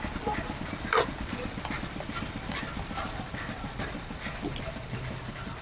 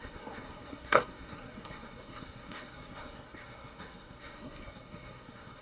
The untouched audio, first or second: first